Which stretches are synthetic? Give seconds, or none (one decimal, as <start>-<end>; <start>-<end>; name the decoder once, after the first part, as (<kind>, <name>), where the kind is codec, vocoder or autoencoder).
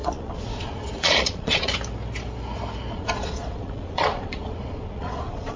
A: 0.0-1.7 (vocoder, Vocos); 2.9-5.6